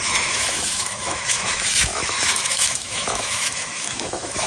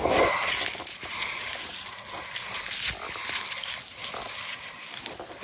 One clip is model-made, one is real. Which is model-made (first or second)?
first